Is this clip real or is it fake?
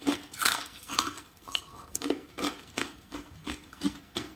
fake